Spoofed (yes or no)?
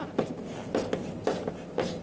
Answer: no